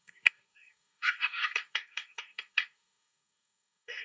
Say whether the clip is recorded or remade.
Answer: remade